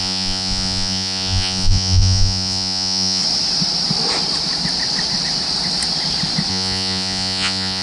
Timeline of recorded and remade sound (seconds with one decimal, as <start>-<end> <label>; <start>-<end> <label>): 0.0-3.2 remade; 3.2-6.5 recorded; 6.5-7.8 remade